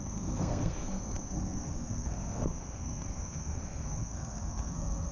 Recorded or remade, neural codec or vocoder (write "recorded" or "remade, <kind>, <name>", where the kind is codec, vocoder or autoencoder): remade, codec, SNAC